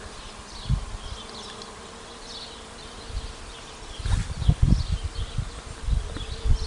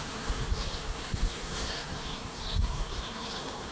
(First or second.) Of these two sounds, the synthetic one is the second